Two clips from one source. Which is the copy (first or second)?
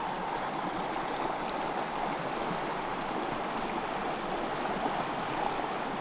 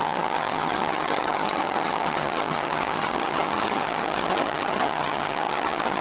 second